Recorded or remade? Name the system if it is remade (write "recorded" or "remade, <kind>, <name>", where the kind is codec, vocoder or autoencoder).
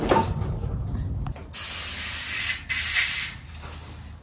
recorded